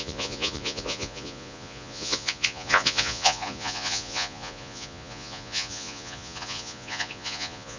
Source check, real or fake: fake